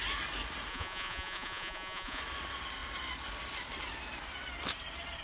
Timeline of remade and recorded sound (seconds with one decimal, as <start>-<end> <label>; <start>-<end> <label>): 0.0-0.7 recorded; 0.7-2.2 remade; 2.2-5.2 recorded